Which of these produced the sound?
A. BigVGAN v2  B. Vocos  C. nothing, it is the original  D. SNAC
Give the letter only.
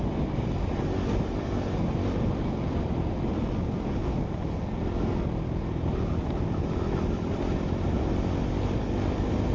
C